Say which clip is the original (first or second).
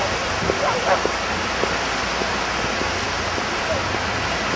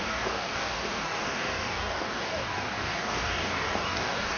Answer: first